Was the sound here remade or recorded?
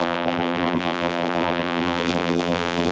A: remade